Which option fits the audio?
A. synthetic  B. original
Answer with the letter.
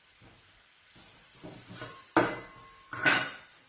B